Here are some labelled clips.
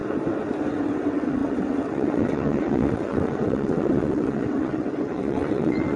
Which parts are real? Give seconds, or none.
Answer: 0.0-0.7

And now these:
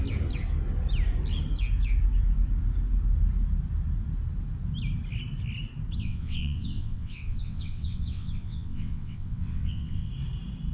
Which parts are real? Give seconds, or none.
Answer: 0.0-6.0; 10.1-10.7

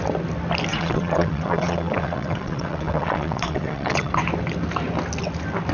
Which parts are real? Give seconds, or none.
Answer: 0.0-0.7; 4.1-5.7